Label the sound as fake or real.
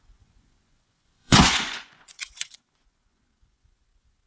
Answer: fake